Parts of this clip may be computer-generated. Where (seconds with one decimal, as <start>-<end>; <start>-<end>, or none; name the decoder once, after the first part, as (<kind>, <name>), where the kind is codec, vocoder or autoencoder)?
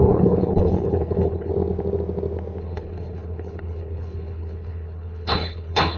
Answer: 0.0-1.5 (codec, HILCodec); 2.6-6.0